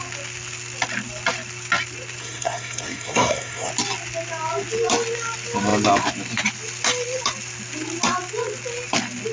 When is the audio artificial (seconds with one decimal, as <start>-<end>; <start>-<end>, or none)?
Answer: 2.2-3.7